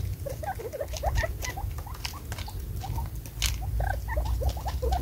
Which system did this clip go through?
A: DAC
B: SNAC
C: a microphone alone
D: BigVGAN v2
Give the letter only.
C